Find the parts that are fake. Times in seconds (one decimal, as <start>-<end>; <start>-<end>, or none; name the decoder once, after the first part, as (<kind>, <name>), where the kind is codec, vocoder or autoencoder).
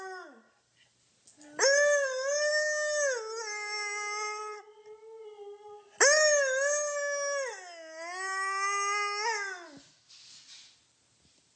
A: none